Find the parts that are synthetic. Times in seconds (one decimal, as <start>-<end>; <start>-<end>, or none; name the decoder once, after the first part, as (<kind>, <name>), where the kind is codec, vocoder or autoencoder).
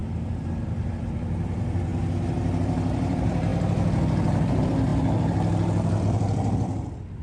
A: 0.0-1.9 (vocoder, BigVGAN v2); 2.6-3.5; 4.5-7.2